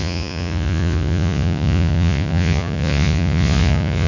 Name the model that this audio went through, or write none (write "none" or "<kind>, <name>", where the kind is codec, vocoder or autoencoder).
vocoder, Vocos